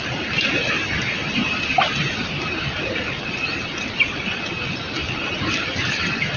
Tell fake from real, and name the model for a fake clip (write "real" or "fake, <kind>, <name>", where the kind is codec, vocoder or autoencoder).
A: real